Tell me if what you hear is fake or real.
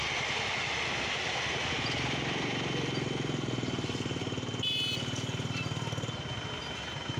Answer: real